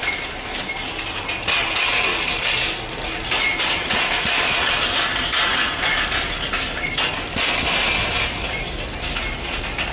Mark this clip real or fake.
real